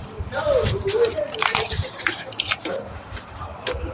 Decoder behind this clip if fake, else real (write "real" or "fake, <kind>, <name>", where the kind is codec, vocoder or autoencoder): fake, vocoder, BigVGAN v2